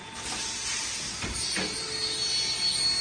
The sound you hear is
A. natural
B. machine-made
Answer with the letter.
A